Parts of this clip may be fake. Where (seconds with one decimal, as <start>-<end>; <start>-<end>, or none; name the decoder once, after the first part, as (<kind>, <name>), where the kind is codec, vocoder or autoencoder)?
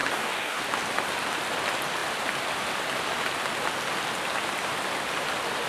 0.0-0.6 (codec, DAC)